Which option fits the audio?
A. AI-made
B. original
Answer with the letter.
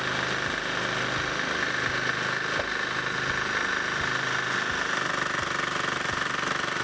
B